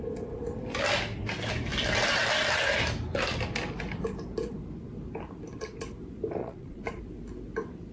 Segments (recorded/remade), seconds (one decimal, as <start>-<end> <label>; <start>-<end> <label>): 0.0-6.4 recorded; 6.4-7.0 remade; 7.0-7.9 recorded